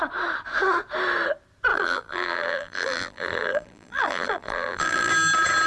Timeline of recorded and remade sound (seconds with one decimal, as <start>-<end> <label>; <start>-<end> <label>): 0.0-1.7 recorded; 1.7-5.1 remade; 5.1-5.7 recorded